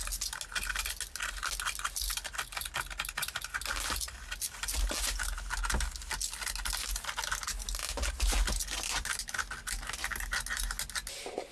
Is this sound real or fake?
real